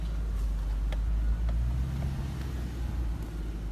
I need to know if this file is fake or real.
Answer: real